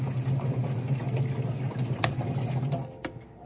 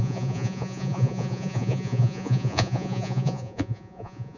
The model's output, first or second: second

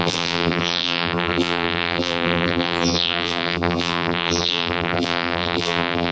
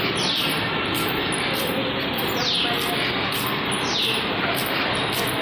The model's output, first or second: first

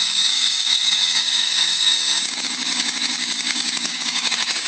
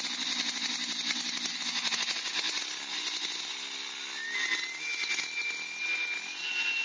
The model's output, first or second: first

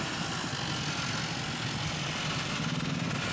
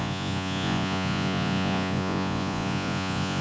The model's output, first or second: second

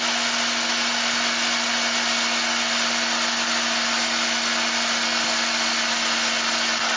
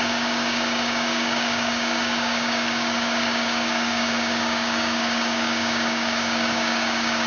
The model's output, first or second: second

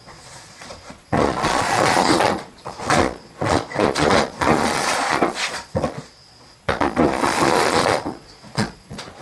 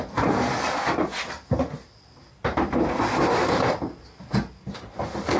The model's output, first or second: first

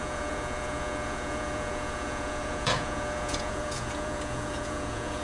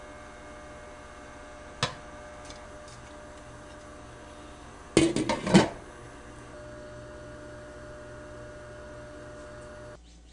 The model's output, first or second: first